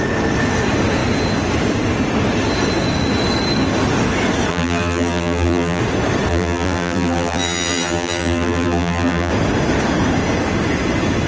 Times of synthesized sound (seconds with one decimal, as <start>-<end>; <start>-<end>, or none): 4.5-5.8; 6.3-9.3